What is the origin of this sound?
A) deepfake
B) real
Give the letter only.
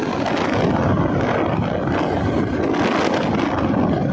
B